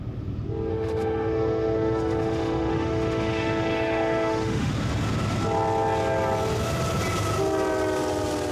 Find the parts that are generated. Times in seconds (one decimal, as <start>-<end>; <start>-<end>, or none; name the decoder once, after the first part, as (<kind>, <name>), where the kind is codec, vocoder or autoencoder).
0.7-4.7 (autoencoder, DAC-VAE)

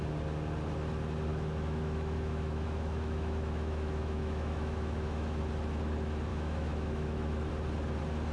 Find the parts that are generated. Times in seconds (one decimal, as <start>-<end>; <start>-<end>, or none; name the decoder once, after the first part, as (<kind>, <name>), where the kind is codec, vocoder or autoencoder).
1.3-5.4 (autoencoder, DAC-VAE); 6.3-7.5